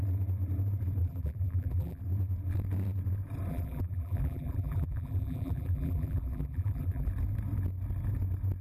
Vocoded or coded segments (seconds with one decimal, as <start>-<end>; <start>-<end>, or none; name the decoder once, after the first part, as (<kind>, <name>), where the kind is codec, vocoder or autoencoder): 1.0-2.0 (vocoder, BigVGAN v2); 3.5-7.1